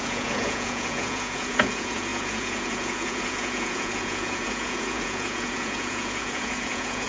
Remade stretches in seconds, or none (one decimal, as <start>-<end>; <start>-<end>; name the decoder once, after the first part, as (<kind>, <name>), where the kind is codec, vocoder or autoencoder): 0.0-7.1 (vocoder, Vocos)

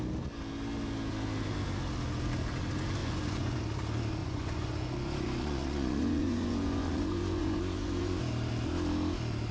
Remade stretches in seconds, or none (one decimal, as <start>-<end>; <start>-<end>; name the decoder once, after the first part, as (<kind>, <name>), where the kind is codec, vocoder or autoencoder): 3.0-3.6 (vocoder, Vocos); 4.2-8.2

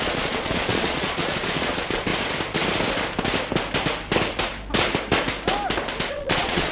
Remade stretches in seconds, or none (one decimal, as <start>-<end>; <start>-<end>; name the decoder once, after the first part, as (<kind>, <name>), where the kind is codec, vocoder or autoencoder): 0.0-2.1 (vocoder, Vocos); 6.1-6.7